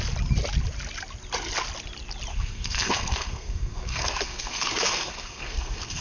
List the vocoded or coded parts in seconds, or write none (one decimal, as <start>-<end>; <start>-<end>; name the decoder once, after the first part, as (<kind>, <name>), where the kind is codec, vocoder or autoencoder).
2.3-6.0 (codec, SNAC)